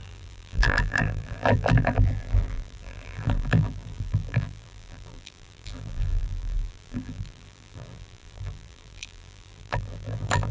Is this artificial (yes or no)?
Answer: yes